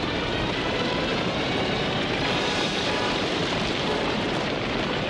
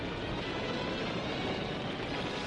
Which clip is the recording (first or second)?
second